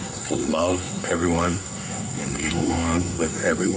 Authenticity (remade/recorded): remade